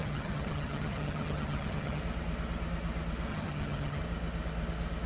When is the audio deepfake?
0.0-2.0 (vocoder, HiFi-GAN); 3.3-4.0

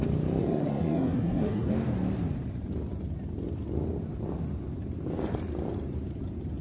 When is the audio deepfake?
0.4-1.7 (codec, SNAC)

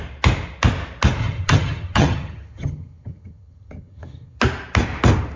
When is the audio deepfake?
1.2-4.4 (vocoder, HiFi-GAN)

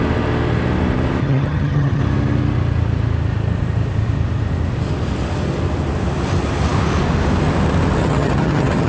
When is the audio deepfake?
1.2-2.0 (vocoder, HiFi-GAN); 8.0-8.9

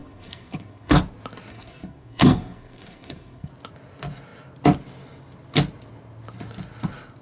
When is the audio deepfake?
0.0-1.0 (codec, SNAC); 1.5-3.5